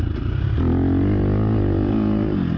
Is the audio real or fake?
real